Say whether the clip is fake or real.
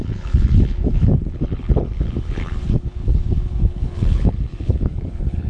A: fake